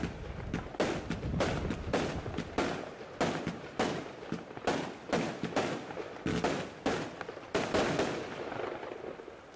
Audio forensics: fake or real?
real